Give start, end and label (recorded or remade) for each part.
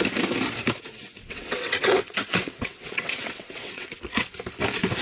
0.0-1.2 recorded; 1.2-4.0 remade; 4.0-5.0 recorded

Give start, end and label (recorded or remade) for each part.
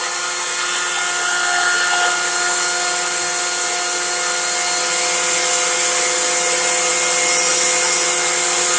0.0-8.8 recorded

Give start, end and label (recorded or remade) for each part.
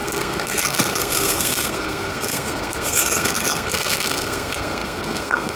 0.0-5.6 remade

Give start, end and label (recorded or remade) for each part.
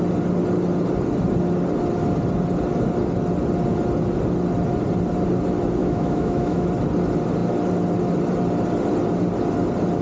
0.0-5.8 recorded; 5.8-6.7 remade; 6.7-10.0 recorded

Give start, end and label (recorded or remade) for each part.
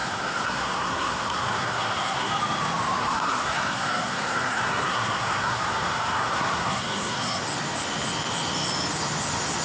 0.0-2.3 remade; 2.3-3.0 recorded; 3.0-7.4 remade; 7.4-9.6 recorded